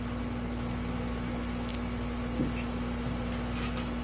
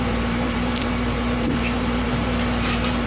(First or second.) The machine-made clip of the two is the second